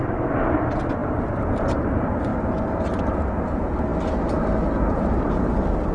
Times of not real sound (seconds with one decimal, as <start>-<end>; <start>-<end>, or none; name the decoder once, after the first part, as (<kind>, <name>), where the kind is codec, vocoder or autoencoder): none